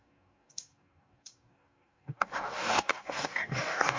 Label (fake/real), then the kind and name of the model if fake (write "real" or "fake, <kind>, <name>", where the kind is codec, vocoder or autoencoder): fake, codec, DAC